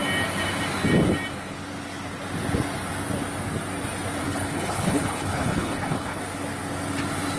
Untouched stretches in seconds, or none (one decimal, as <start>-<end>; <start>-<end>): 0.0-4.2; 6.2-7.4